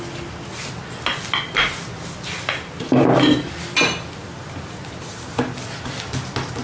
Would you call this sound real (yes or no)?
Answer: yes